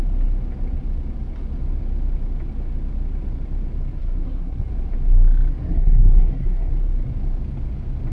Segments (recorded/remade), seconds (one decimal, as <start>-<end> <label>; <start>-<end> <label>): 0.0-4.0 recorded; 4.0-4.7 remade; 4.7-5.6 recorded; 5.6-6.7 remade; 6.7-8.1 recorded